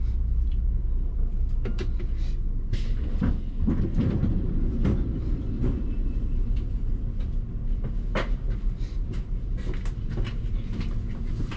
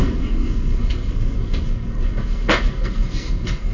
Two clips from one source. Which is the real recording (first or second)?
first